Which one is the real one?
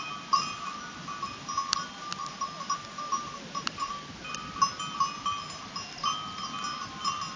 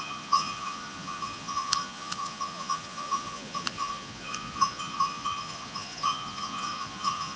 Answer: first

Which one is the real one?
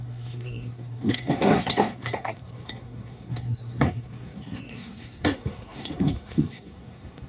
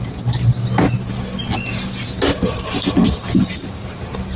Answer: second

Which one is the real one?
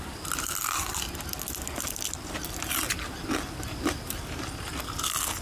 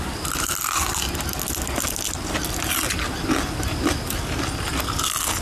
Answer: second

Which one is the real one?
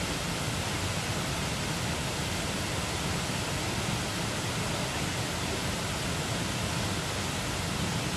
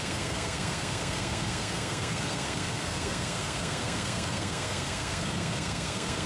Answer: first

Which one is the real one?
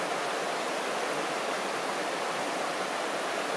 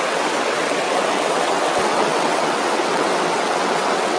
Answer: first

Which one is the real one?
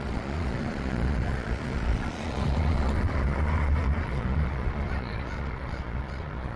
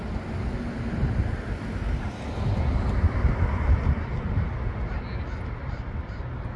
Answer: second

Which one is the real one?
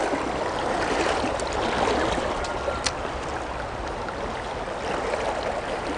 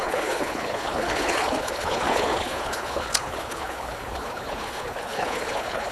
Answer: first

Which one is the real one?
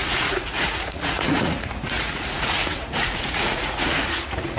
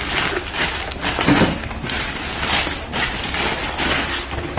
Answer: second